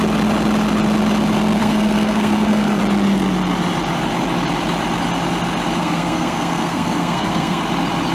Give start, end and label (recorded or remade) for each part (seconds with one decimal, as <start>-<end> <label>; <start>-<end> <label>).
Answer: 0.0-1.6 recorded; 1.6-2.8 remade; 2.8-5.8 recorded; 5.8-7.6 remade; 7.6-8.1 recorded